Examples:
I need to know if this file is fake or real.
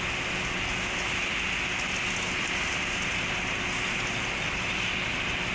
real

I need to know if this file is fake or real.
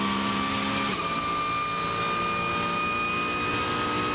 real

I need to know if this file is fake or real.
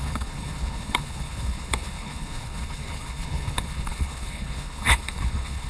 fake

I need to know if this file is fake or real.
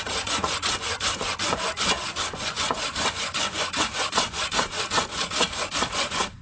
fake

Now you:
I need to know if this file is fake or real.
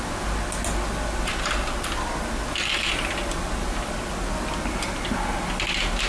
real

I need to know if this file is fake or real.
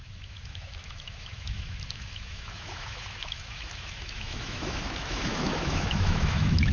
fake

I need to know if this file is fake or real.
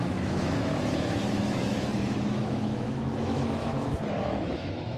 fake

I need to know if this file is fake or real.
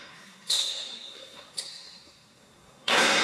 fake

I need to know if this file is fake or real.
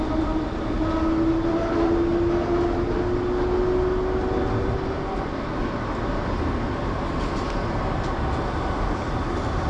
real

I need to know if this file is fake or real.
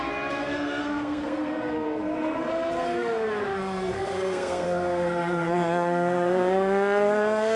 fake